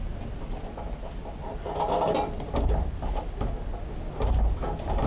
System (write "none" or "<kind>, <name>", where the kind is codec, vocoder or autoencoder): none